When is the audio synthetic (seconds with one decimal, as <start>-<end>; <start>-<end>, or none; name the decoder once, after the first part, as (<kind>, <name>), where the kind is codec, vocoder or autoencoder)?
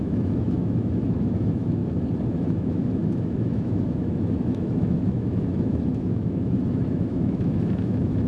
0.0-1.8 (autoencoder, DAC-VAE); 2.3-8.3